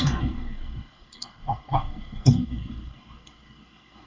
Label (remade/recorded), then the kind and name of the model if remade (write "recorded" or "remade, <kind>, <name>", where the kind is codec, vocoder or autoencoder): remade, codec, SNAC